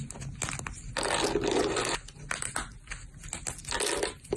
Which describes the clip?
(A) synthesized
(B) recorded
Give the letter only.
B